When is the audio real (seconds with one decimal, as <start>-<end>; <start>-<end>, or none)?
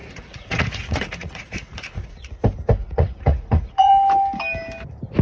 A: 2.3-2.8; 3.9-5.2